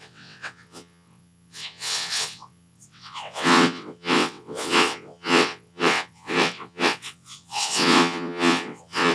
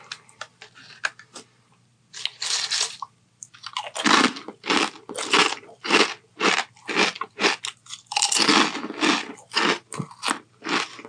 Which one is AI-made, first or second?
first